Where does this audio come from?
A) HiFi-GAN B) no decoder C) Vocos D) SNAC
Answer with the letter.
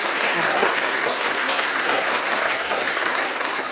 D